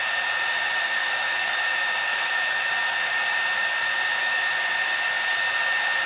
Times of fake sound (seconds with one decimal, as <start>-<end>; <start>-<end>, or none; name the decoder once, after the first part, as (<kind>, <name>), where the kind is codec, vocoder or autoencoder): 1.0-3.1 (autoencoder, DAC-VAE); 4.2-4.7